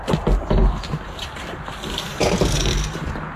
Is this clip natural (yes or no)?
yes